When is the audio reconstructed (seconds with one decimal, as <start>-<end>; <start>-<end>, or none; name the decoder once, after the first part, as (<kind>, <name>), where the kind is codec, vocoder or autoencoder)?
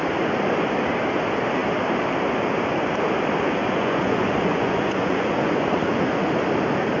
3.6-6.1 (vocoder, Vocos)